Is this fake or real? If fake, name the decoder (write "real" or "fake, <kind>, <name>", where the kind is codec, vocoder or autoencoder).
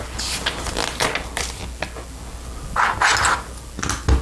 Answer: real